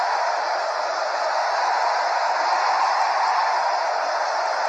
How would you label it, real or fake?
real